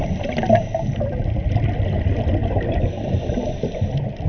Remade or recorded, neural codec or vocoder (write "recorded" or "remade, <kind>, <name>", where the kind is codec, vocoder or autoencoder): recorded